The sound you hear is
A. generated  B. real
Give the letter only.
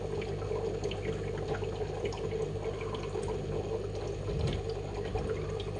B